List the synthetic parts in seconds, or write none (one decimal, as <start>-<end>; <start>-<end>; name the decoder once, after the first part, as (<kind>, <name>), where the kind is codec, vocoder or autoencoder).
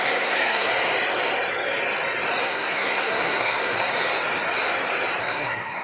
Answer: 0.0-0.7 (codec, SNAC); 2.4-3.9; 5.2-5.8